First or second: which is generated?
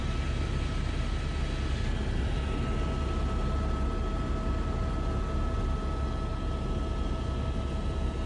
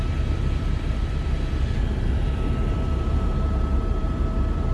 second